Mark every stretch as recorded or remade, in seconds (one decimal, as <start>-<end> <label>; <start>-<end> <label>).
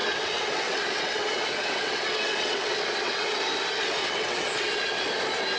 0.0-3.4 remade; 3.4-4.0 recorded; 4.0-5.0 remade; 5.0-5.6 recorded